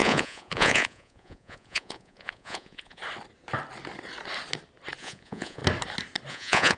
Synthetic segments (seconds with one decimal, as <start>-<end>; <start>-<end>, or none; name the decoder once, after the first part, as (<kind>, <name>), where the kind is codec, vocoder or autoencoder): 0.0-3.0 (vocoder, Vocos); 5.0-5.6; 6.3-6.8